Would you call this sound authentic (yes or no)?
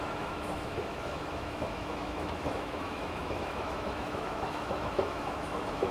no